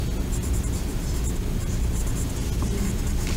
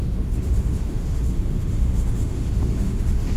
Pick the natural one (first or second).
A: first